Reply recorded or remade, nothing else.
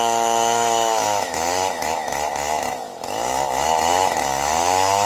remade